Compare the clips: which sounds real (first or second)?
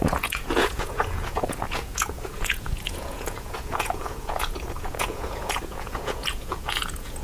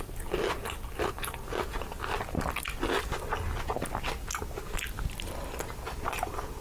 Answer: second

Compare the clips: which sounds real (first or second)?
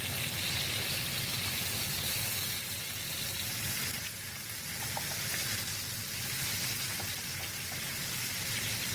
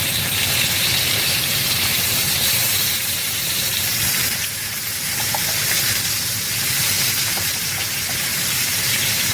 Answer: first